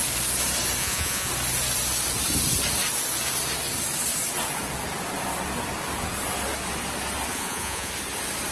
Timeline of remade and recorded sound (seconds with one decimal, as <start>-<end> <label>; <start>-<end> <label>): 0.0-0.8 recorded; 0.8-1.3 remade; 1.3-7.3 recorded; 7.3-7.9 remade; 7.9-8.5 recorded